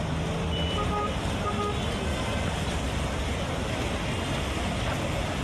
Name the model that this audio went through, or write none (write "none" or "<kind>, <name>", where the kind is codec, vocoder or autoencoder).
none